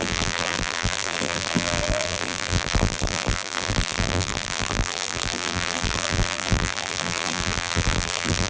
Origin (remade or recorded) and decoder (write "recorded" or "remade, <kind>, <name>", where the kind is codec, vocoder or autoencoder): remade, vocoder, BigVGAN v2